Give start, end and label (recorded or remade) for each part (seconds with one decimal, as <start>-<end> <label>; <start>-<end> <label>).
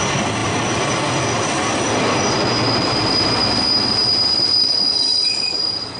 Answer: 0.0-6.0 recorded